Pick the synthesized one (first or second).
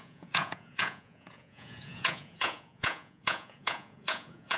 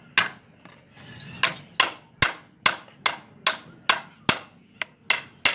first